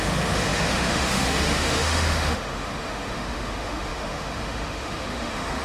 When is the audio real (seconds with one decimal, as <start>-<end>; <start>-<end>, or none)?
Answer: none